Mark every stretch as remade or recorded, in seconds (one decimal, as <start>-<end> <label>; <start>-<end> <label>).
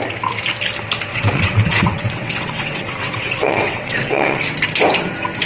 0.0-1.1 recorded; 1.1-4.4 remade; 4.4-5.5 recorded